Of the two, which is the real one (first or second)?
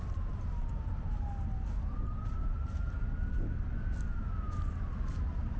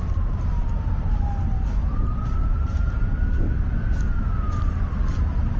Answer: first